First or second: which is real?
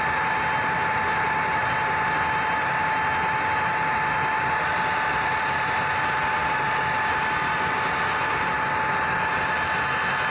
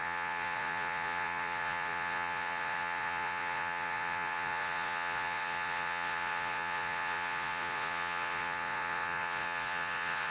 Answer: first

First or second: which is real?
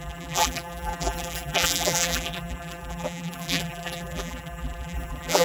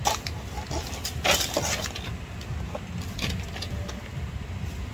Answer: second